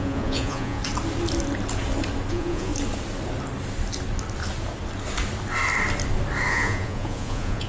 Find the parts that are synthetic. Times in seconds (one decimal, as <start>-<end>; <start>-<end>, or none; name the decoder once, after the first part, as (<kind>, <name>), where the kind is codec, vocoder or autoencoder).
0.0-0.8 (vocoder, Vocos); 2.3-2.7; 6.5-7.7